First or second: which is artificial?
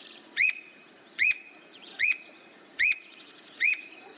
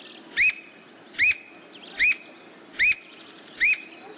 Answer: first